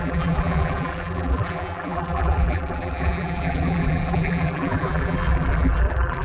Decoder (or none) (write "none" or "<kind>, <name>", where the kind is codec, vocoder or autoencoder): vocoder, BigVGAN v2